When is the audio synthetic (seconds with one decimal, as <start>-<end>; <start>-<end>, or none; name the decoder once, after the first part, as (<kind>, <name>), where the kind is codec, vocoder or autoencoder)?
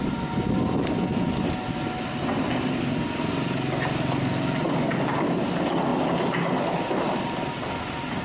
none